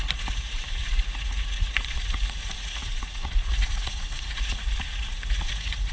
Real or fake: fake